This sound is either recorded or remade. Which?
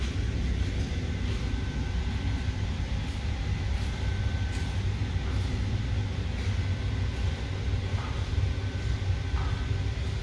recorded